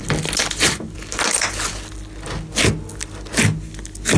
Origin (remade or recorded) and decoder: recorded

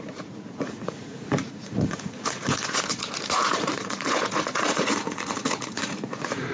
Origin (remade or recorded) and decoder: remade, vocoder, Vocos